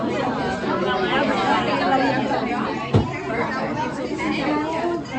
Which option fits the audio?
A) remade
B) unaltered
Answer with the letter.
B